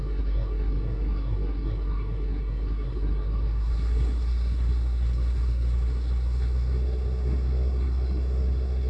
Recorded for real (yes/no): no